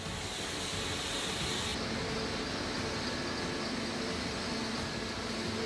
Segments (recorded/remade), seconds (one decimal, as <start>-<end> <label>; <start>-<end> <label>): 0.0-5.7 recorded